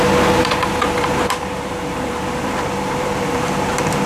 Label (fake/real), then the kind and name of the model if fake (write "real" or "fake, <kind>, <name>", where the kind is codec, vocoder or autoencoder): fake, vocoder, BigVGAN v2